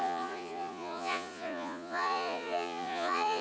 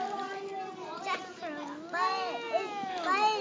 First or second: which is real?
second